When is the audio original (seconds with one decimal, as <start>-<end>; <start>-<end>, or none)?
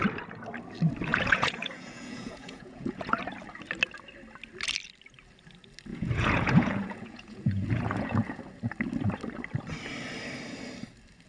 0.0-1.1; 3.2-5.9; 8.4-11.3